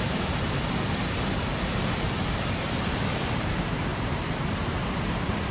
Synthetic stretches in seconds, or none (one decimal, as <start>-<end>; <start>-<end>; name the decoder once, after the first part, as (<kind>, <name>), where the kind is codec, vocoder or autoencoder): 0.0-1.5 (vocoder, BigVGAN v2); 2.2-3.9; 5.1-5.5